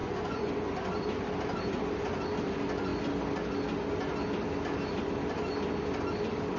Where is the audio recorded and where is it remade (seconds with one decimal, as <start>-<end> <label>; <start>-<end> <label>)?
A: 0.0-0.5 remade; 0.5-6.6 recorded